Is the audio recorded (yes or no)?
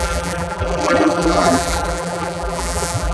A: no